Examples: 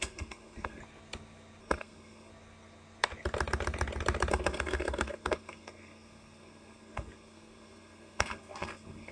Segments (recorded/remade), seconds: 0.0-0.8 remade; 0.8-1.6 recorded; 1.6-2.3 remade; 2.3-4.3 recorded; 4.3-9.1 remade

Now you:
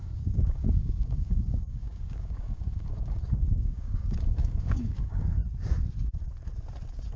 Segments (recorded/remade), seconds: 0.0-5.4 remade; 5.4-7.2 recorded